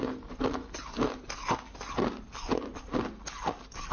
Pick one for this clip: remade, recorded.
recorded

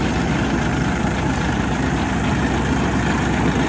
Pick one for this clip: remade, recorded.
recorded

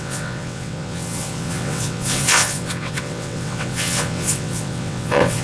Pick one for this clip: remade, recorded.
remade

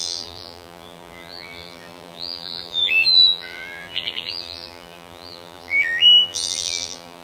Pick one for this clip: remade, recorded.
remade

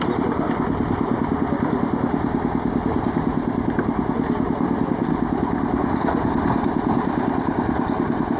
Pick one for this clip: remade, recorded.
recorded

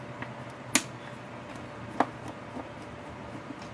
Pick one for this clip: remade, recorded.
recorded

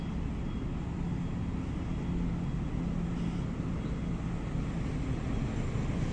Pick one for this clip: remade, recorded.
recorded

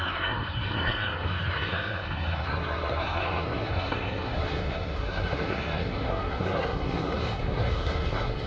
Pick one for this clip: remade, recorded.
remade